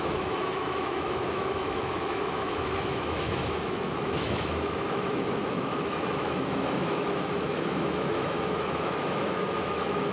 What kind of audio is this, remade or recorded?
remade